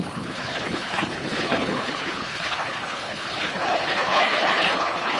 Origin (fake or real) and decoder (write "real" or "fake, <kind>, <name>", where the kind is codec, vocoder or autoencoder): fake, codec, HILCodec